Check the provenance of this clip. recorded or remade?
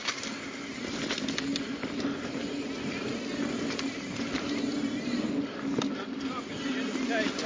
recorded